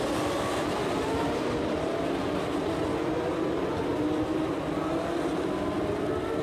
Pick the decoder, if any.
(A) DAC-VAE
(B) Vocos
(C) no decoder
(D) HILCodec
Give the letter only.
C